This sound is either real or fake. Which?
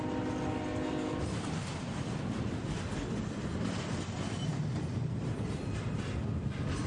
real